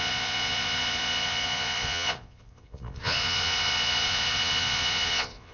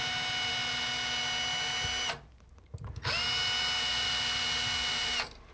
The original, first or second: second